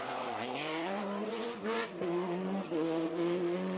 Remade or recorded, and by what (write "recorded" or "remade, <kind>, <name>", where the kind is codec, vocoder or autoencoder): remade, vocoder, Vocos